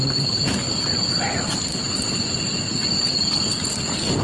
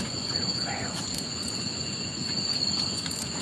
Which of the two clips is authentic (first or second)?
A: first